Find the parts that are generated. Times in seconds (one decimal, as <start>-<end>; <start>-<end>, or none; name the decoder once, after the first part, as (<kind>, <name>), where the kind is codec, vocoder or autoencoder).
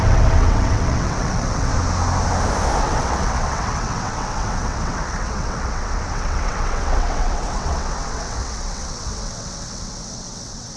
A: 0.0-1.7 (vocoder, WaveNeXt); 2.8-10.8